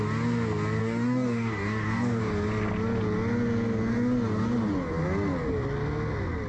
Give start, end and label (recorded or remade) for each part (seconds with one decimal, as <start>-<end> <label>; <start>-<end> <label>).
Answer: 0.0-0.8 recorded; 0.8-2.2 remade; 2.2-6.5 recorded